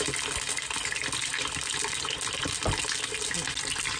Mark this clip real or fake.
real